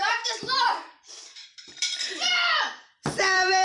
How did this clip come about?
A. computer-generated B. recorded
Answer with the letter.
A